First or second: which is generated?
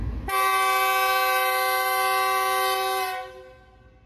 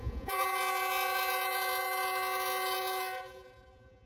second